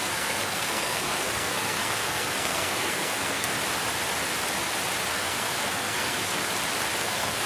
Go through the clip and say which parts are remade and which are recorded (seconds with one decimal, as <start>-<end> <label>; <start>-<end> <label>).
0.0-3.5 remade; 3.5-5.1 recorded; 5.1-6.4 remade; 6.4-7.0 recorded; 7.0-7.5 remade